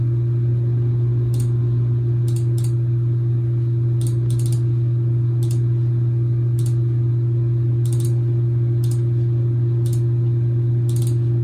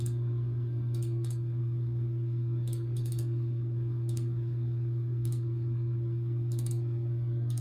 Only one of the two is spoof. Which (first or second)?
second